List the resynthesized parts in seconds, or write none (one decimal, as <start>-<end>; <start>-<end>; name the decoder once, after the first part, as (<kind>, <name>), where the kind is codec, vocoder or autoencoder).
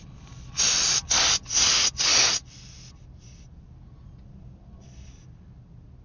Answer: 0.0-2.1 (vocoder, BigVGAN v2); 3.2-6.0